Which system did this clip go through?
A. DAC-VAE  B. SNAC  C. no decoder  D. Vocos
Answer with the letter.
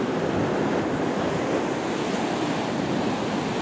C